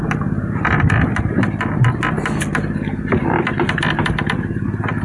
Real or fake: real